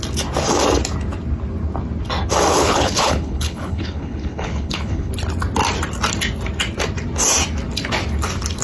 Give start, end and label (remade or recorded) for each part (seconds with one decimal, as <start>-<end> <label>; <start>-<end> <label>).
0.0-2.5 recorded; 2.5-5.1 remade; 5.1-8.6 recorded